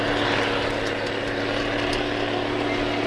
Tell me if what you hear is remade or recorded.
recorded